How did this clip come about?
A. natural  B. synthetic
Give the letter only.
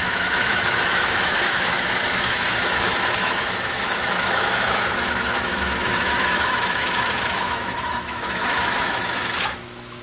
B